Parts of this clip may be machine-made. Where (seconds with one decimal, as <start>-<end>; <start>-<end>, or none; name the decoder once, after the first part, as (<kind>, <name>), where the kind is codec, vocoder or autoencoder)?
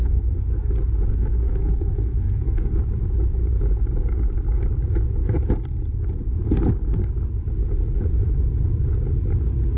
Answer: 0.0-0.7 (codec, SNAC); 1.1-2.8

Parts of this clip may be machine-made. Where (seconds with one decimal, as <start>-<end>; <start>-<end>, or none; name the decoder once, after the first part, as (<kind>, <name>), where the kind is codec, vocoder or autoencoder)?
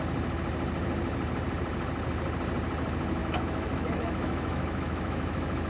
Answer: 3.2-5.7 (autoencoder, DAC-VAE)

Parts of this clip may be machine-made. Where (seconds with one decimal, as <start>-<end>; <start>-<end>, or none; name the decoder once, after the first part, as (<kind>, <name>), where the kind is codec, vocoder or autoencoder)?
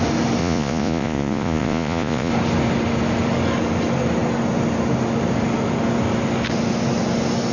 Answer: 0.4-2.3 (vocoder, Vocos)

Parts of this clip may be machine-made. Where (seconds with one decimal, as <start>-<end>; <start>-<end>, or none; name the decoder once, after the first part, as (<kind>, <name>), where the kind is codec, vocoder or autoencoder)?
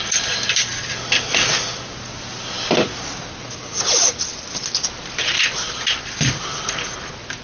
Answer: none